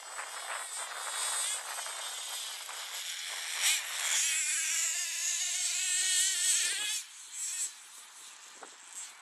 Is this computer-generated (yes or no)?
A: no